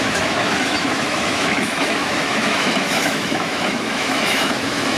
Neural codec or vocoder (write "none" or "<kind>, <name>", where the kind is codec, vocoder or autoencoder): autoencoder, DAC-VAE